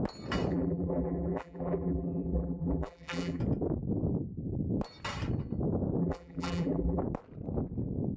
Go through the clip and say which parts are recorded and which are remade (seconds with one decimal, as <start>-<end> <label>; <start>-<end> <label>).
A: 0.0-0.5 recorded; 0.5-3.4 remade; 3.4-6.0 recorded; 6.0-7.0 remade; 7.0-8.2 recorded